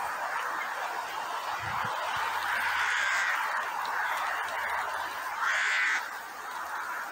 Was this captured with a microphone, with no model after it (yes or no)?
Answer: yes